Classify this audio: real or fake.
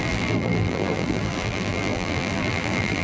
fake